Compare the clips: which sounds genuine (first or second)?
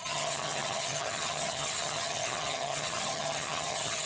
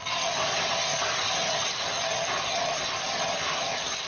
second